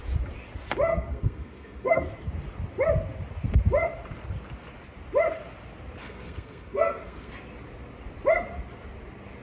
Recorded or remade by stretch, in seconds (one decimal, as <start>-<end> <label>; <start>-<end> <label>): 0.0-0.9 recorded; 0.9-2.1 remade; 2.1-6.0 recorded; 6.0-7.3 remade; 7.3-9.4 recorded